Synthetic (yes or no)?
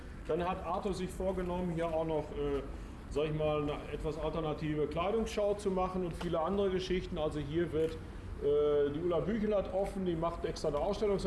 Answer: no